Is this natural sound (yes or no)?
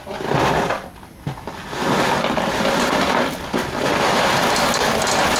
yes